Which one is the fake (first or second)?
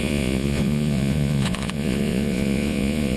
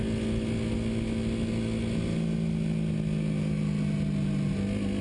first